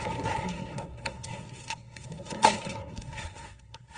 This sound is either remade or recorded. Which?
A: remade